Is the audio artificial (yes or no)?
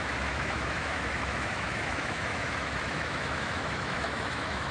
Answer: yes